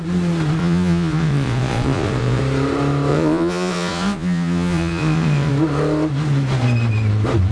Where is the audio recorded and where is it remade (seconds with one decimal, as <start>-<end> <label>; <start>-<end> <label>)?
0.0-0.6 recorded; 0.6-2.4 remade; 2.4-3.1 recorded; 3.1-5.5 remade; 5.5-7.5 recorded